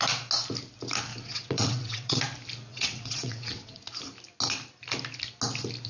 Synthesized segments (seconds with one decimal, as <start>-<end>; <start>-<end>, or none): 1.1-2.2; 2.7-3.8